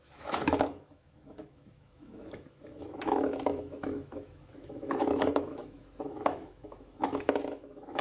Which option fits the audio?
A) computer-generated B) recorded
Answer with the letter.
A